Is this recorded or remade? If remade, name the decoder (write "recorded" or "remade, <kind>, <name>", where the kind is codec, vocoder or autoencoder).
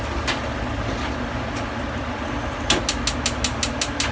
recorded